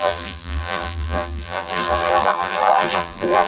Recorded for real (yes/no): no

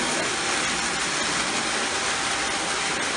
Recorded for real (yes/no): yes